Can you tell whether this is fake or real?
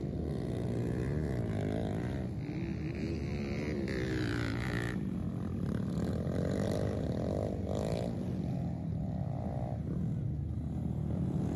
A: real